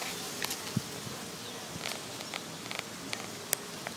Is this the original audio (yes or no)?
yes